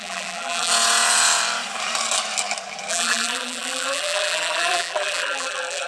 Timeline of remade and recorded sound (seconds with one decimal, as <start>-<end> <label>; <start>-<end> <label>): 0.0-0.7 remade; 0.7-2.9 recorded; 2.9-5.9 remade

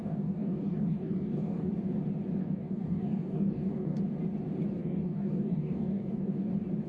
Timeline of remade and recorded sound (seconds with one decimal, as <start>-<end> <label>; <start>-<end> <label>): 0.0-1.7 remade; 1.7-2.4 recorded; 2.4-4.0 remade; 4.0-4.8 recorded; 4.8-6.5 remade; 6.5-6.9 recorded